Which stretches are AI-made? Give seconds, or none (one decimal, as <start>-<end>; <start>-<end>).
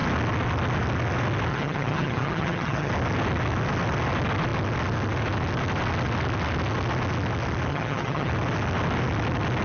1.5-2.9; 7.7-8.3